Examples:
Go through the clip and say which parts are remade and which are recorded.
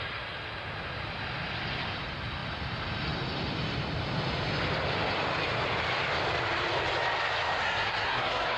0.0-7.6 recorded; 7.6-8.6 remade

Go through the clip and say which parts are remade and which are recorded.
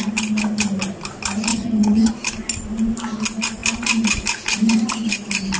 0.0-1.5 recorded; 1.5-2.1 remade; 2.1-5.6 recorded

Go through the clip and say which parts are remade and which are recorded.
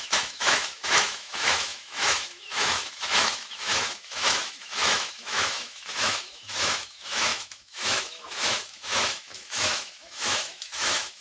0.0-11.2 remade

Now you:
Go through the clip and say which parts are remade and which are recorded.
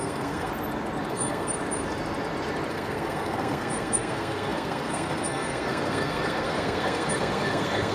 0.0-0.5 remade; 0.5-1.1 recorded; 1.1-1.5 remade; 1.5-2.7 recorded; 2.7-7.9 remade